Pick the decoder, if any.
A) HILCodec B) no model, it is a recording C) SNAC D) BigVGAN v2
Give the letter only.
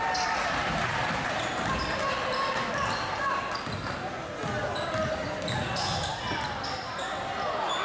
B